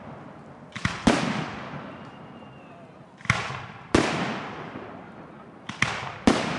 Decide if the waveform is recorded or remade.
remade